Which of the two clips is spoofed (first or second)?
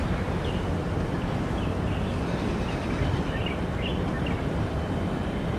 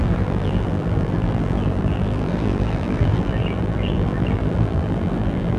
second